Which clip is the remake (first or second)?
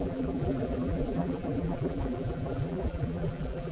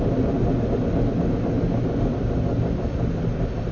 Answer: first